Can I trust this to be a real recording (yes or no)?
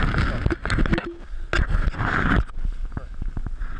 yes